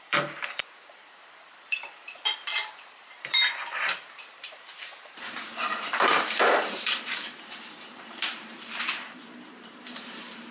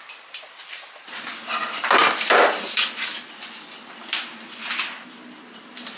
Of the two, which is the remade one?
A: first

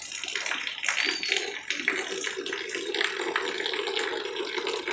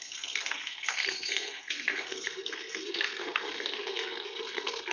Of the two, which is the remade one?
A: second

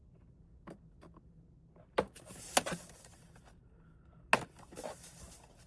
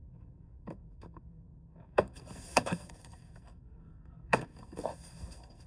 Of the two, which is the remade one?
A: second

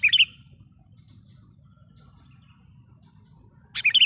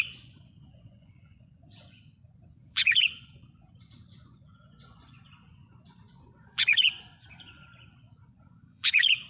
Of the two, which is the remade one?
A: second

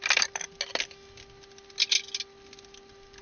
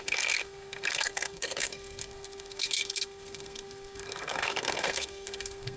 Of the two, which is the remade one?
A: second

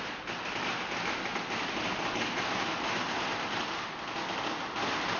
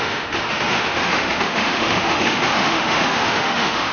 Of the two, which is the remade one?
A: second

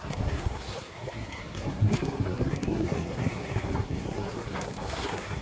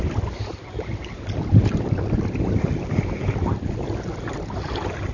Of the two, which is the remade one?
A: first